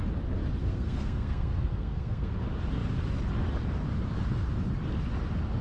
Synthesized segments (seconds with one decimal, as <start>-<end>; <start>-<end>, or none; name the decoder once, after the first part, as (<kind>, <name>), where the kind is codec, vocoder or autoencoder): 0.6-2.3 (codec, SNAC)